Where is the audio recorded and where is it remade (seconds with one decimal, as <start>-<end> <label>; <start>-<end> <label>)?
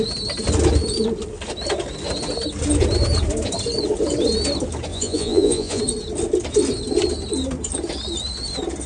0.0-4.9 recorded; 4.9-5.8 remade; 5.8-8.9 recorded